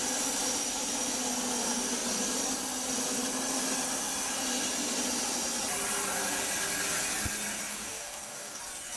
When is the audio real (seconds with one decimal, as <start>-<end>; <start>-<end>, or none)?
0.0-7.7; 8.6-9.0